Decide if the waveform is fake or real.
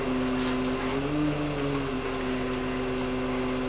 real